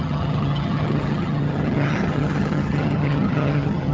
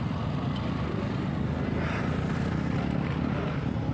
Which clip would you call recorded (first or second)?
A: second